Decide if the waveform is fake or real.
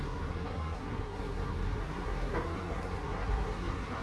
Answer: fake